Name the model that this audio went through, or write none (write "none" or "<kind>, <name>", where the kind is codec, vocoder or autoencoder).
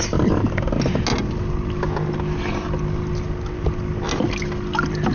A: none